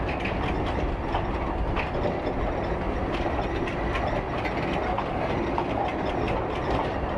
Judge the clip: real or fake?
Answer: real